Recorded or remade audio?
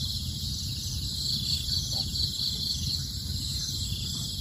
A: remade